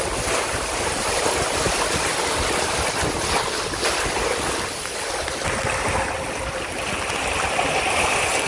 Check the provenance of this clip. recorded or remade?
recorded